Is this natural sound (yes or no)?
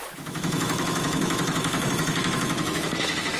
no